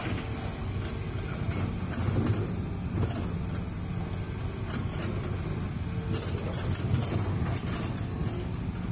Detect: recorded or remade recorded